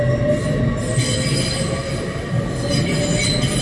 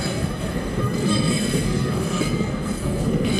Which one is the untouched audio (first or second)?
first